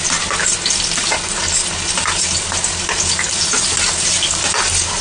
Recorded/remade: recorded